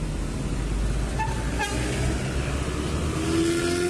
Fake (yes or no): no